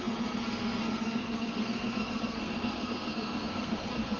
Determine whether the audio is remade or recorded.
remade